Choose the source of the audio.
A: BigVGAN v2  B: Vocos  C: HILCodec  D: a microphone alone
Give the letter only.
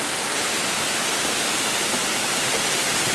D